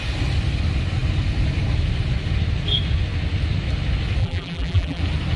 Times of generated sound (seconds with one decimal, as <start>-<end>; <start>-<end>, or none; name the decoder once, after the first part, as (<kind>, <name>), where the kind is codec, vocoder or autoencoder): 4.2-5.0 (vocoder, BigVGAN v2)